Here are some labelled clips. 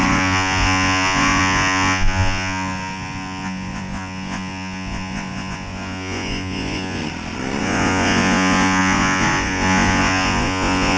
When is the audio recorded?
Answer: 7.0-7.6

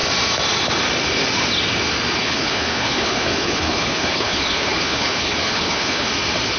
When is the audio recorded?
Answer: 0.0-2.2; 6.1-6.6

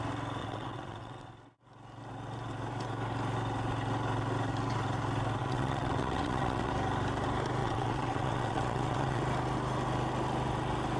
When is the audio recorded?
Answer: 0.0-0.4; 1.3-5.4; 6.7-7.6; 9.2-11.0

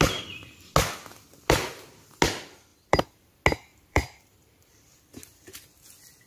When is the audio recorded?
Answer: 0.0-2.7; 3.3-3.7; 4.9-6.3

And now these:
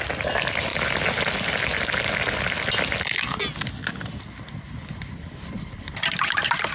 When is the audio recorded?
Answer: 0.0-6.7

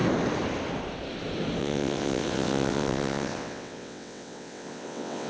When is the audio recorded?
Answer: 0.0-1.6